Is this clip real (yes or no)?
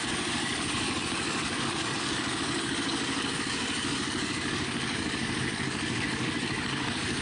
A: no